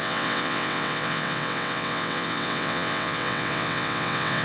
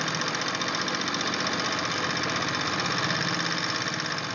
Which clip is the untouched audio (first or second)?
second